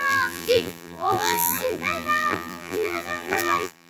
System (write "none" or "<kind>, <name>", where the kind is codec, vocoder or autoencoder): vocoder, BigVGAN v2